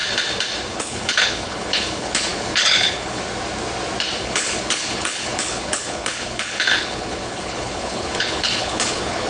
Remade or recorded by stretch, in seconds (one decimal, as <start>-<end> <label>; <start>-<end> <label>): 0.0-0.7 recorded; 0.7-3.2 remade; 3.2-4.2 recorded; 4.2-9.3 remade